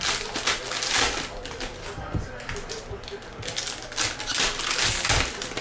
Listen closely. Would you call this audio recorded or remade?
recorded